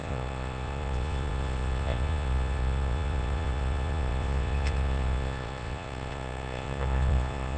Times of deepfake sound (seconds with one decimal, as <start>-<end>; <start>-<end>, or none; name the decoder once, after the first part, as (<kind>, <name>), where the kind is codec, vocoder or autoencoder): 0.0-7.6 (vocoder, Vocos)